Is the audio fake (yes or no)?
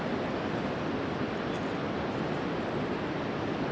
no